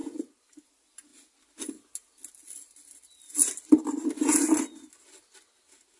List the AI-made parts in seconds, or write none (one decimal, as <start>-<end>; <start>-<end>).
none

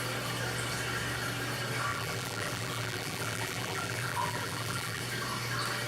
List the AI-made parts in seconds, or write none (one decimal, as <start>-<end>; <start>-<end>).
1.9-5.0

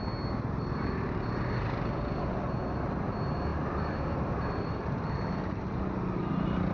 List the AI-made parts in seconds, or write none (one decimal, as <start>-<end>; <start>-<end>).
none

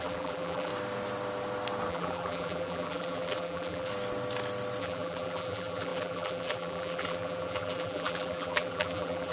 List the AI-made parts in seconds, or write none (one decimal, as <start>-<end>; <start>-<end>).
0.0-0.7; 1.9-3.9; 4.8-9.3

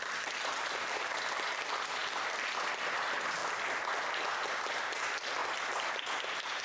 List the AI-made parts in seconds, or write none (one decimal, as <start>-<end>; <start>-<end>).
0.0-2.0; 2.7-3.4; 4.5-5.4; 5.9-6.6

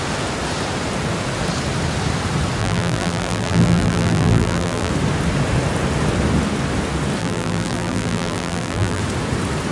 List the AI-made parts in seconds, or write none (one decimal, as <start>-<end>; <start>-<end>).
2.6-4.9; 7.2-9.0